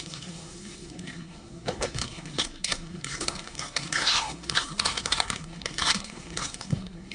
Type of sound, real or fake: fake